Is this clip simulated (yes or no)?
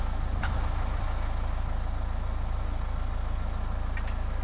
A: no